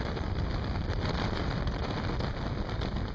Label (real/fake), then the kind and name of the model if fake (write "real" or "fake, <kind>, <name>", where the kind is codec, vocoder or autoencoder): real